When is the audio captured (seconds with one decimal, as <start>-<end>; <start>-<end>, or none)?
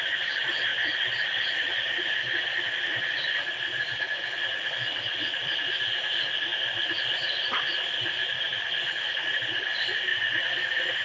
0.0-11.0